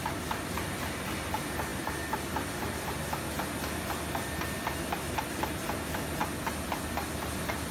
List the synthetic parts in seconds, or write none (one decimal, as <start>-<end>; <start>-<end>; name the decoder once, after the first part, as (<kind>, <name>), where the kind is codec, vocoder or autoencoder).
none